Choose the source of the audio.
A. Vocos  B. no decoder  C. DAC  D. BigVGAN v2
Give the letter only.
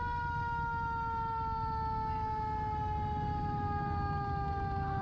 B